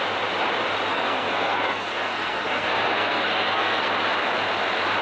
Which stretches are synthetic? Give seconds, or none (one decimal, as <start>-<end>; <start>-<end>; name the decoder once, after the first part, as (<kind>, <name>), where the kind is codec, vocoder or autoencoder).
0.9-3.9 (codec, SNAC)